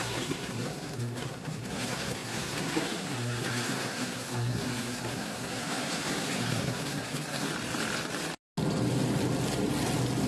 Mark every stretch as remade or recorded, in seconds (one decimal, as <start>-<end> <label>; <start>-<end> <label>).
0.0-7.5 remade; 7.5-10.3 recorded